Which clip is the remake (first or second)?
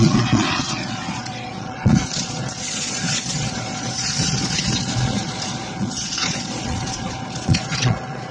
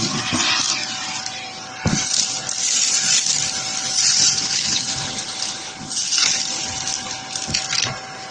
first